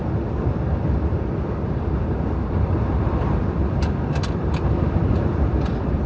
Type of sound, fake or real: fake